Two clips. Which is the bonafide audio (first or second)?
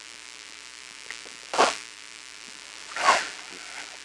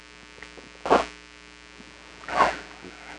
second